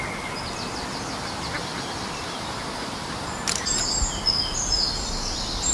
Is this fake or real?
real